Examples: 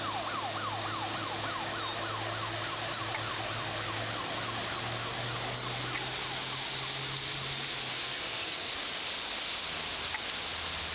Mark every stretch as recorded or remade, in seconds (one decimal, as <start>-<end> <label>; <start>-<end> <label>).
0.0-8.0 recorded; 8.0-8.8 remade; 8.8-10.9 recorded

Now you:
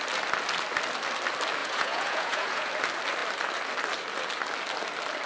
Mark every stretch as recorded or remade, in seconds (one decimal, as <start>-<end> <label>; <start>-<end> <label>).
0.0-1.6 recorded; 1.6-2.7 remade; 2.7-5.3 recorded

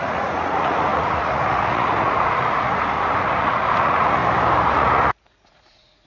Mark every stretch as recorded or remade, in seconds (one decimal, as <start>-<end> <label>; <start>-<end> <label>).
0.0-4.2 remade; 4.2-4.7 recorded; 4.7-6.1 remade

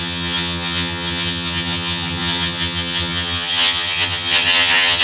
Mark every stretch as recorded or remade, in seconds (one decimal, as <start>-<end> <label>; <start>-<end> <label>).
0.0-5.0 remade

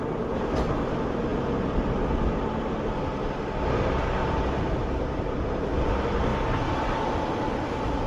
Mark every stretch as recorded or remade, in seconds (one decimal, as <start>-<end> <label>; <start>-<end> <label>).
0.0-8.1 recorded

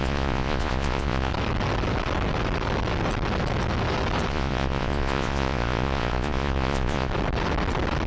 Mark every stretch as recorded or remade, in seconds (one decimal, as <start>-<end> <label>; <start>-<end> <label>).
0.0-1.3 remade; 1.3-4.3 recorded; 4.3-7.1 remade; 7.1-8.1 recorded